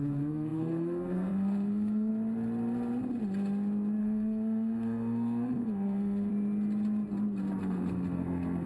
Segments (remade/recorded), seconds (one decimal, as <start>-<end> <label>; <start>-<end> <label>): 0.0-2.1 remade; 2.1-4.0 recorded; 4.0-6.3 remade; 6.3-7.6 recorded; 7.6-8.7 remade